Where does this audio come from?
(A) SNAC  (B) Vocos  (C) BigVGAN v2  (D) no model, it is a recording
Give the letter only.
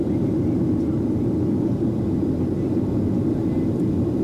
D